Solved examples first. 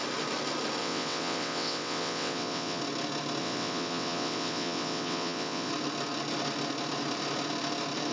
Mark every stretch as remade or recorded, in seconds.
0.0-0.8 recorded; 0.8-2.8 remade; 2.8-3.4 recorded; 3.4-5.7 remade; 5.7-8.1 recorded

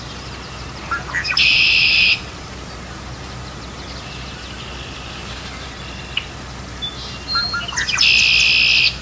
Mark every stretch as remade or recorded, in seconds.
0.0-1.4 recorded; 1.4-2.5 remade; 2.5-9.0 recorded